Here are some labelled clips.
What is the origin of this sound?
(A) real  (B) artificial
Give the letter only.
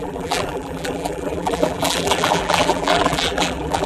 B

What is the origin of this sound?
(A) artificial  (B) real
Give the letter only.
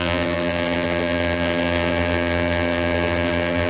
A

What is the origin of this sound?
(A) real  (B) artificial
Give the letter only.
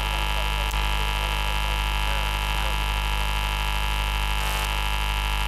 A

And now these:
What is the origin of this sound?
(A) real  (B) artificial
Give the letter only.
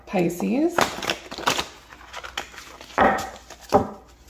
A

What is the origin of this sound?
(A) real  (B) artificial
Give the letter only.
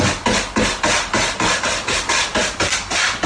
A